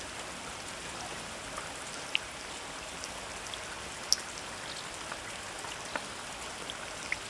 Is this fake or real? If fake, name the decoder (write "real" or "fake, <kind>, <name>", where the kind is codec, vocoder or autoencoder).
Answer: real